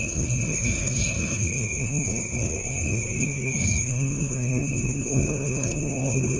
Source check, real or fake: fake